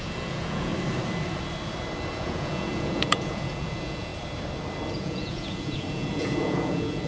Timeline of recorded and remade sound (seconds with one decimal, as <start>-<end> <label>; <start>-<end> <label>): 0.0-0.7 remade; 0.7-2.1 recorded; 2.1-4.1 remade; 4.1-4.9 recorded; 4.9-7.1 remade